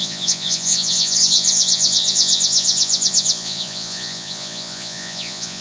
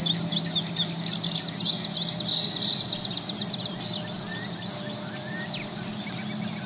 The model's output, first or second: first